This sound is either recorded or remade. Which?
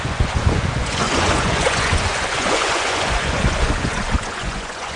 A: remade